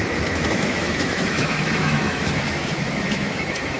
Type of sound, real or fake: fake